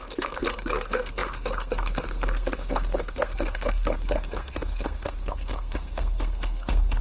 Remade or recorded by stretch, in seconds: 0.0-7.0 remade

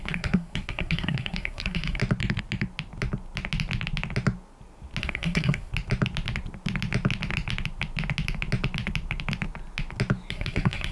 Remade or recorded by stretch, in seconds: 0.0-2.0 remade; 2.0-5.0 recorded; 5.0-5.7 remade; 5.7-10.3 recorded; 10.3-10.9 remade

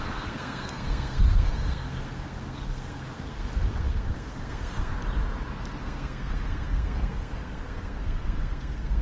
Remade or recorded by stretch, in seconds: 0.0-4.9 remade; 4.9-5.8 recorded; 5.8-9.0 remade

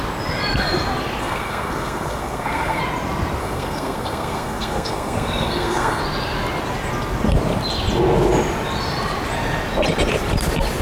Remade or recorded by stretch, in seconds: 0.0-1.2 recorded; 1.2-2.8 remade; 2.8-3.4 recorded; 3.4-6.0 remade; 6.0-10.8 recorded

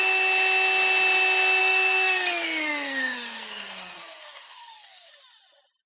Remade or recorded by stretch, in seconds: 0.0-1.6 recorded; 1.6-5.1 remade; 5.1-5.9 recorded

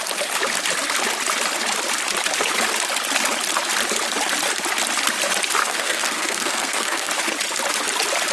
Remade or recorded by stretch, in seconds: 0.0-5.6 recorded; 5.6-7.1 remade; 7.1-8.3 recorded